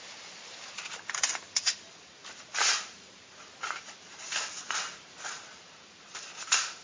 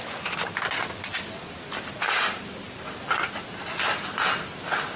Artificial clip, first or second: first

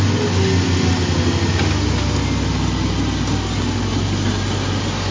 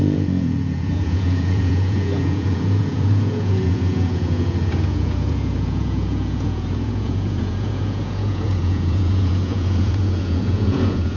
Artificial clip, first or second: second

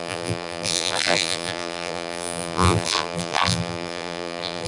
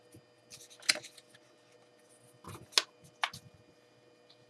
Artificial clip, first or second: first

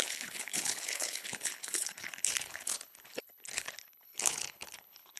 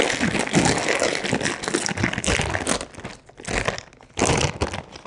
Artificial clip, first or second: first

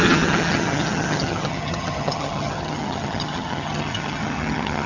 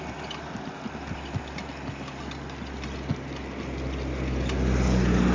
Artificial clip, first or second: first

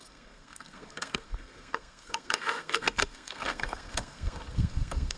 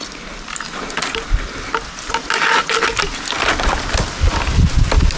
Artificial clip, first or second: first